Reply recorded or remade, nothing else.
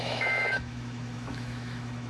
remade